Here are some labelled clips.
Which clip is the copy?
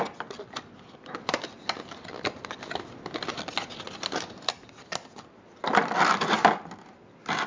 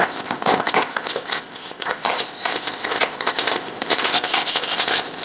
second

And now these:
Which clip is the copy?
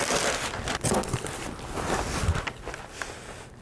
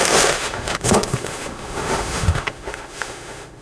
second